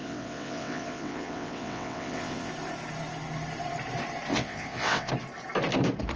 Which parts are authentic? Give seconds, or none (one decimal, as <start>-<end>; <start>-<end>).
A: 2.5-4.3; 5.1-6.2